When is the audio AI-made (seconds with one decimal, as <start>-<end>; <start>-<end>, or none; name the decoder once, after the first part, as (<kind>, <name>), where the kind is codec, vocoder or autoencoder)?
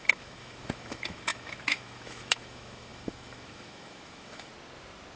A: 0.0-4.5 (autoencoder, DAC-VAE)